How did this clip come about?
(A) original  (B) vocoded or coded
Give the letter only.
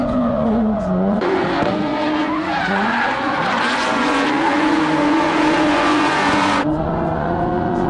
B